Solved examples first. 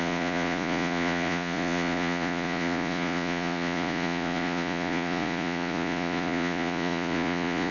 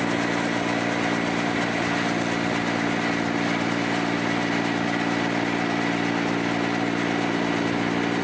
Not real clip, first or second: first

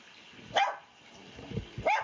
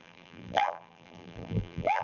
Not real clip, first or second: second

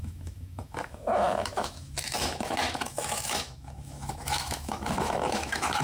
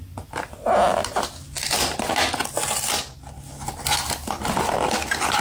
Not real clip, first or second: first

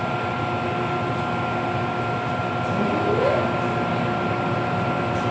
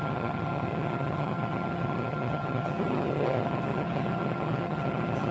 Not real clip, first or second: second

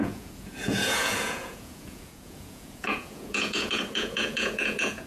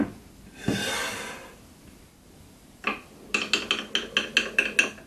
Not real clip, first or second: first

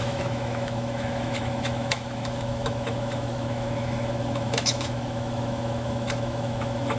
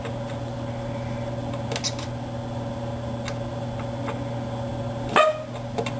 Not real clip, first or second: first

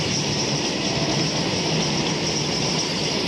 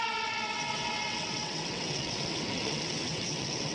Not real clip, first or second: second